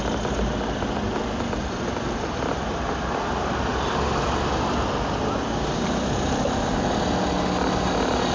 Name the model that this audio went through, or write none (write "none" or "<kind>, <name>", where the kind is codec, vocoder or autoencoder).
none